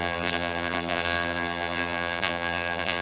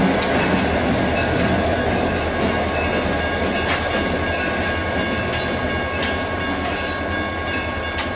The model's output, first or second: first